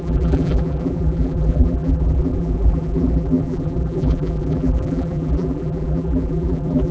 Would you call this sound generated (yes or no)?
yes